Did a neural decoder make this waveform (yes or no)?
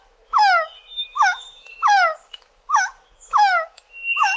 yes